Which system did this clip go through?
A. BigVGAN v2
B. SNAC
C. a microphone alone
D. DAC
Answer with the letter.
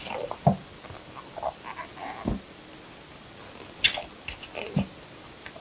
C